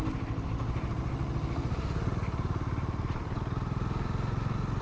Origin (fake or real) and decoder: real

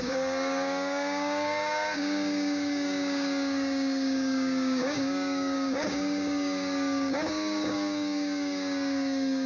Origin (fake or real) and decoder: fake, codec, DAC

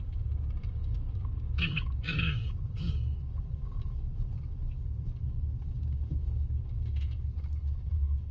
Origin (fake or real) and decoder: fake, codec, DAC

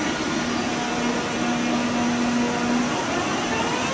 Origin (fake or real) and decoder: real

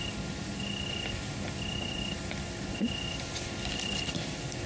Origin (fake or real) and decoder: real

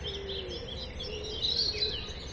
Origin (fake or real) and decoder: real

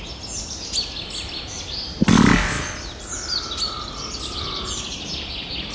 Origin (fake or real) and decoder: real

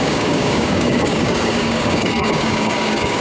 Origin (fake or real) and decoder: fake, codec, DAC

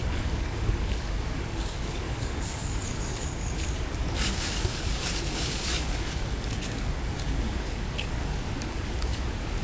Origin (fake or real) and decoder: fake, codec, DAC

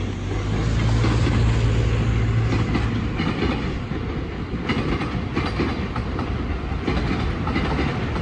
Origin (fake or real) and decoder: real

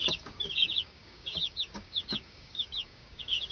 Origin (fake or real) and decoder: fake, codec, DAC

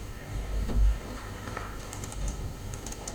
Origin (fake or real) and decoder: fake, codec, DAC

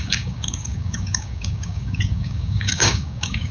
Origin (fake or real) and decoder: fake, codec, DAC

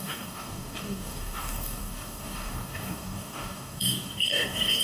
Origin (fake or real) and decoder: fake, codec, DAC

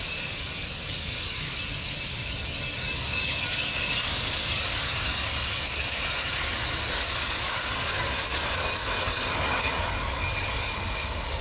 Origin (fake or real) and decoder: fake, codec, DAC